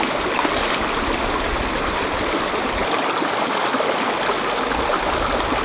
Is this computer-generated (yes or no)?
no